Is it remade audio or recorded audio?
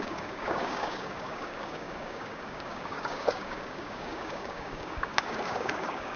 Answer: remade